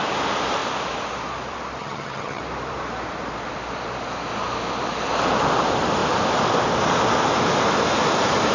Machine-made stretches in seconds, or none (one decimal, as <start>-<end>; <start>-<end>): 1.8-2.4

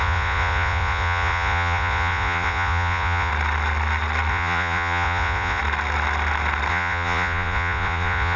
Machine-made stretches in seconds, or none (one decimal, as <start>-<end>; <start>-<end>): 0.0-3.3; 4.3-5.6; 6.7-8.4

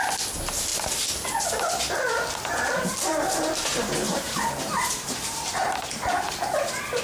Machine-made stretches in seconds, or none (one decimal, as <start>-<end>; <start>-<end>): 3.1-7.0

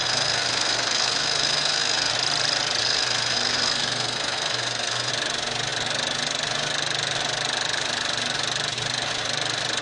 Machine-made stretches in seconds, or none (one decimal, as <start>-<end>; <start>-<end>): 0.0-2.1; 2.8-5.1

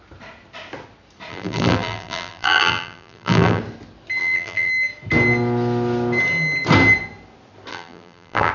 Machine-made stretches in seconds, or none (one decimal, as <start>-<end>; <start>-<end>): 1.3-3.6; 4.2-4.7; 7.7-8.5

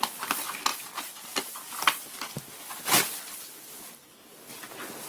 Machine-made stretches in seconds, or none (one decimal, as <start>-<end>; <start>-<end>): none